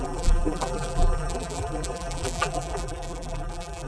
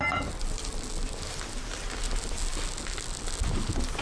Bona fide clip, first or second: second